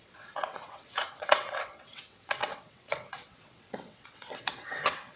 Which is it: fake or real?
fake